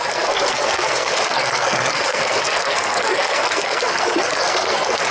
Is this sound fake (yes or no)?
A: yes